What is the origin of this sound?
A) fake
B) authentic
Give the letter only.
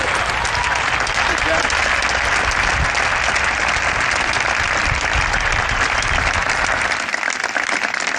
B